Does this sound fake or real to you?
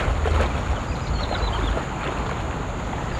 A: real